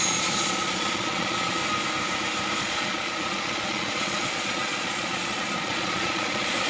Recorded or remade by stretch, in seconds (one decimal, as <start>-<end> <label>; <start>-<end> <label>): 0.0-1.6 remade; 1.6-2.6 recorded; 2.6-6.7 remade